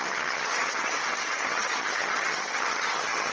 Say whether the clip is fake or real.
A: fake